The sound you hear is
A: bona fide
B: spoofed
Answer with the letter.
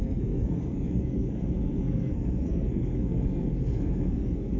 B